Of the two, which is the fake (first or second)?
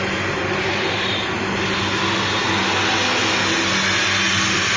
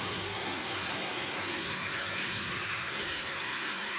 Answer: second